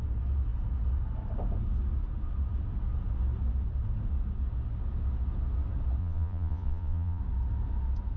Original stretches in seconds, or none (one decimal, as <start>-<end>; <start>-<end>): 0.0-6.0; 7.2-8.2